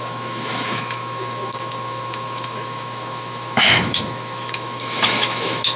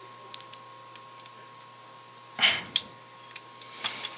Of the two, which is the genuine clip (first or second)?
second